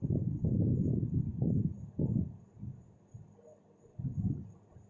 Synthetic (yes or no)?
no